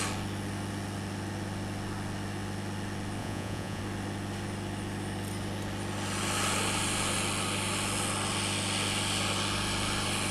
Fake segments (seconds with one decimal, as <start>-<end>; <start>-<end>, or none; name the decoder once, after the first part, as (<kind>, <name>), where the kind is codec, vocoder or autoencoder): 3.2-3.8 (vocoder, Vocos)